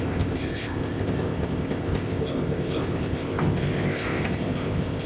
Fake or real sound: fake